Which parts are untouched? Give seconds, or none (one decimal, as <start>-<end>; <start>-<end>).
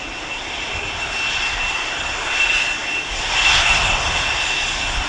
0.0-5.1